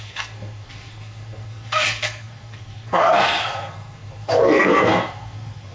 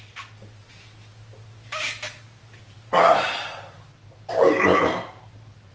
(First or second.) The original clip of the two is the second